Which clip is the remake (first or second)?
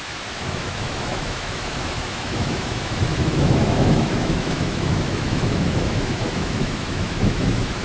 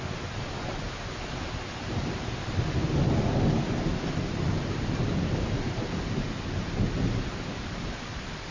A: first